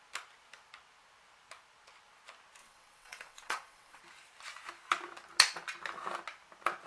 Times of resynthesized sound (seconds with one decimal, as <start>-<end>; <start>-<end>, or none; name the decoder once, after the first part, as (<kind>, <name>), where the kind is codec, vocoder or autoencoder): 2.6-4.0 (vocoder, WaveNeXt)